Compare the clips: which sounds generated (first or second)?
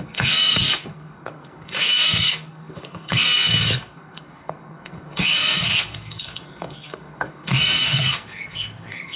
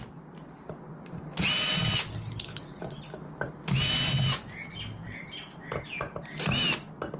first